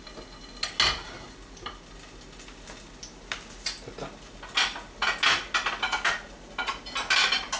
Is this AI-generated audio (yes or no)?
no